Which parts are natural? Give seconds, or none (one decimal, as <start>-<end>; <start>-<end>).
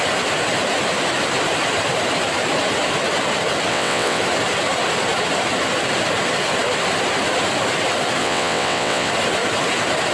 0.0-3.7; 4.2-8.2; 9.1-10.1